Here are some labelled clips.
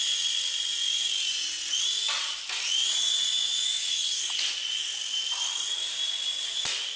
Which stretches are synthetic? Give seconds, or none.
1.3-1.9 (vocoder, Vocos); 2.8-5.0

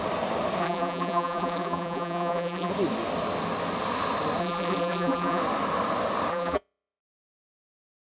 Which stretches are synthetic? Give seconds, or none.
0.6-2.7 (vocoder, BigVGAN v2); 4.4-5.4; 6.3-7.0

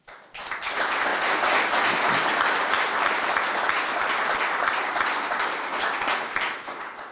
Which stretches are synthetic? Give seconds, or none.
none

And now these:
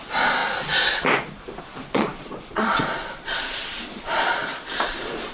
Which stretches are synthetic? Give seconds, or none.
0.0-0.4 (vocoder, Vocos); 1.6-5.3

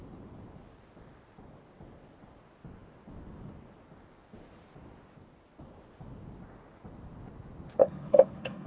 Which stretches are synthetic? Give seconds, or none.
7.8-8.7 (codec, SNAC)

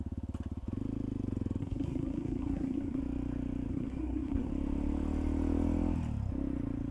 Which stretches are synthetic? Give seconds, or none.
1.6-3.0 (codec, SNAC); 3.7-4.5